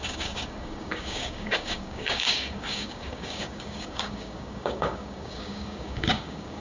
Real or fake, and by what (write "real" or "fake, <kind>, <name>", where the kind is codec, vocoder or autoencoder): fake, codec, DAC